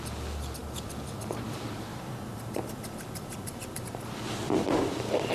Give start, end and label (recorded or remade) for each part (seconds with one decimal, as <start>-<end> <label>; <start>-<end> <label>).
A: 0.0-0.6 recorded; 0.6-1.2 remade; 1.2-1.9 recorded; 1.9-5.3 remade